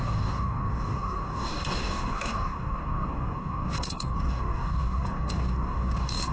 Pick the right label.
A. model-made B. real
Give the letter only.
A